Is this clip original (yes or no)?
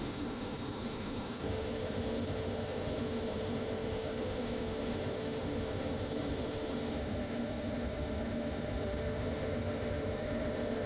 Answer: no